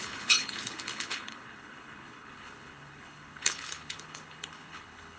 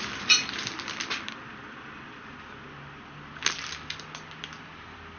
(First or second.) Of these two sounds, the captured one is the second